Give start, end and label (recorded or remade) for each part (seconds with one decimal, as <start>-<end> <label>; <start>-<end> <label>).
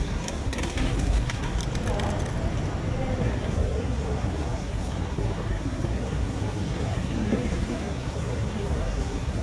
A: 0.0-1.6 remade; 1.6-3.2 recorded; 3.2-9.4 remade